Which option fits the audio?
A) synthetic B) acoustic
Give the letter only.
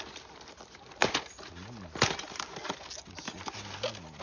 B